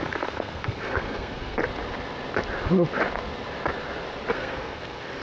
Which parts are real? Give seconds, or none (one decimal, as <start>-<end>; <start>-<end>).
1.6-4.3